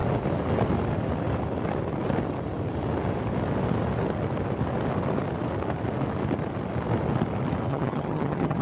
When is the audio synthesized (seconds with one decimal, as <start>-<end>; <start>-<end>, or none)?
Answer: 7.7-8.6